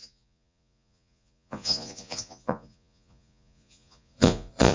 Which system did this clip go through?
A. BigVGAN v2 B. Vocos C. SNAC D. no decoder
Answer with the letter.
B